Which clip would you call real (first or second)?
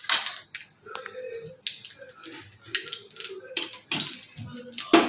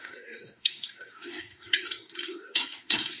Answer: first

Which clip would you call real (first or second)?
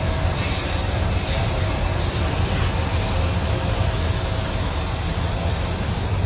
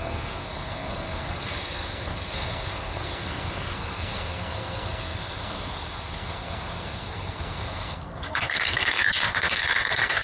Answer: first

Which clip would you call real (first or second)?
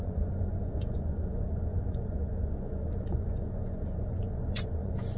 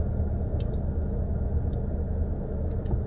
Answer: second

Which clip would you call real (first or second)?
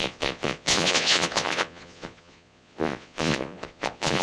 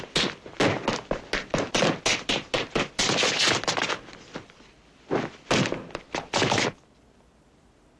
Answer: second